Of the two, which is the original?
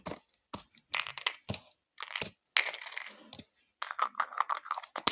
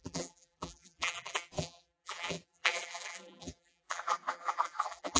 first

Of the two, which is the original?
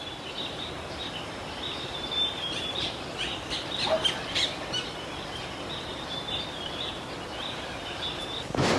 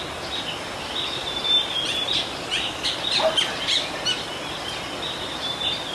second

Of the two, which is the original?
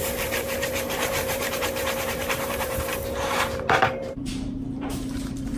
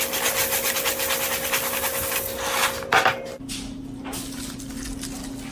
second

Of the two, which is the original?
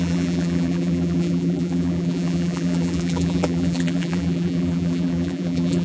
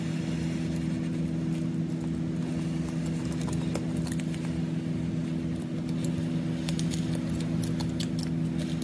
second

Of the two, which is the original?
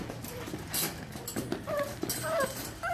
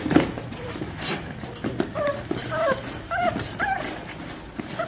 first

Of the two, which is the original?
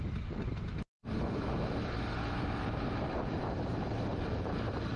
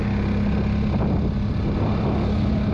second